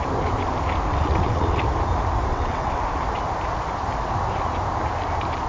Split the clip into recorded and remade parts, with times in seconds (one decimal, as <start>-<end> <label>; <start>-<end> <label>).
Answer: 0.0-0.9 recorded; 0.9-1.6 remade; 1.6-2.3 recorded; 2.3-2.8 remade; 2.8-5.5 recorded